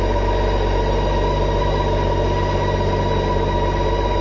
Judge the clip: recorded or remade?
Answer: recorded